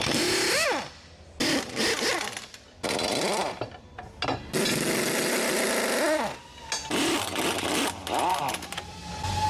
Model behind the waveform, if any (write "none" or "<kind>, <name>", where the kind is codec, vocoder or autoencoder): none